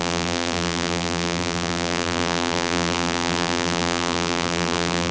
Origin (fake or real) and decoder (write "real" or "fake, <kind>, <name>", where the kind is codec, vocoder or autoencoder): fake, vocoder, BigVGAN v2